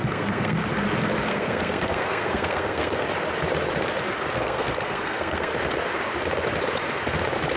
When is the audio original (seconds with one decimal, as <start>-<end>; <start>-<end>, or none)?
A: 0.6-1.3; 3.1-4.3; 5.5-7.6